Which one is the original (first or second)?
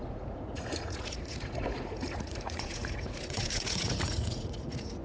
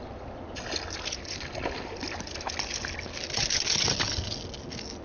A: second